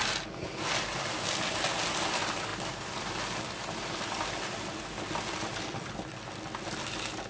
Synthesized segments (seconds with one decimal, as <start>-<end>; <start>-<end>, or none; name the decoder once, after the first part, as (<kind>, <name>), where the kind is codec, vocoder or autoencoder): none